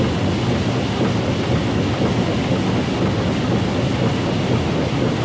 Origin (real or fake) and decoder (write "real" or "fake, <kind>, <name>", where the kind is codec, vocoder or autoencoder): real